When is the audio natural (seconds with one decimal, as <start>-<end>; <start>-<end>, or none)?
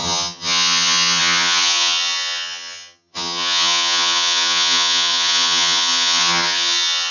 none